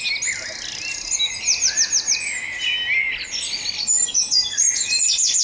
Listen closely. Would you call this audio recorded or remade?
recorded